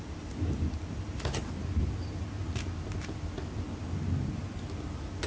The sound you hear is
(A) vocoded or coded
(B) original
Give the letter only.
B